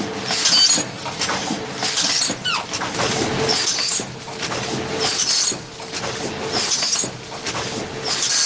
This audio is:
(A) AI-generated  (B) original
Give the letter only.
B